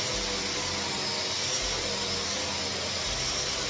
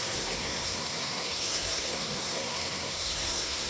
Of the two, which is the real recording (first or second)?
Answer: first